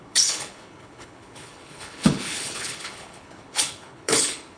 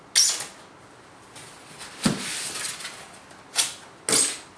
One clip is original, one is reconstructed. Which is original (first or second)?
second